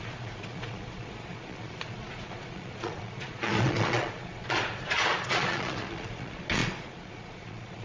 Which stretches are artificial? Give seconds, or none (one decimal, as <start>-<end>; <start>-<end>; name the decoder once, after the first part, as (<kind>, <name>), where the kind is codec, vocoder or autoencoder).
0.0-7.8 (vocoder, Vocos)

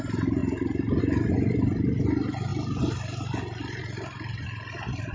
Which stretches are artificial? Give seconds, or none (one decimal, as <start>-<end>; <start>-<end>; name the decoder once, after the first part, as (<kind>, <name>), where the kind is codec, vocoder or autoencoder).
none

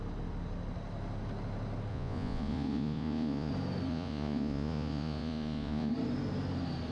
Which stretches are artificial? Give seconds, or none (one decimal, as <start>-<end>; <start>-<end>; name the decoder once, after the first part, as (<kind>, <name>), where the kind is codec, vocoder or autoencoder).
1.9-3.5 (vocoder, Vocos); 3.9-5.9

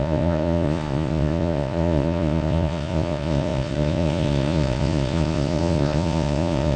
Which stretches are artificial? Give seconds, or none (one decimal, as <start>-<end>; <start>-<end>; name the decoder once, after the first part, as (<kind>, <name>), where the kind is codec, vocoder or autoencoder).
0.0-6.8 (vocoder, Vocos)

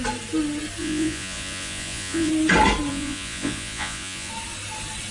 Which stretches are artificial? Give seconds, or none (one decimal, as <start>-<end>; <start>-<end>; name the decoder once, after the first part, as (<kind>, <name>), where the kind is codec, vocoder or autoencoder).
0.8-2.3 (vocoder, Vocos); 2.9-4.3

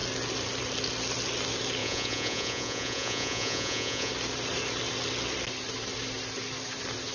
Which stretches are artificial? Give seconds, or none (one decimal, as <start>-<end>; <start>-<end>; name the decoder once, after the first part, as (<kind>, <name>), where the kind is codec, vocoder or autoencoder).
1.8-4.1 (vocoder, Vocos)